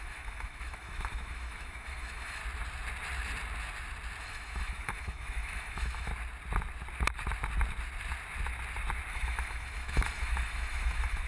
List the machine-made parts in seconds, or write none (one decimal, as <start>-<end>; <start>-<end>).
0.0-2.4; 4.2-6.1; 9.1-11.3